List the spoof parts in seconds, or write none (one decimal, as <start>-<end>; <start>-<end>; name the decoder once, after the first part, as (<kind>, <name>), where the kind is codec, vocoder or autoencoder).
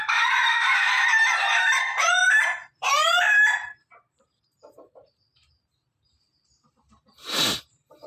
0.0-8.1 (vocoder, BigVGAN v2)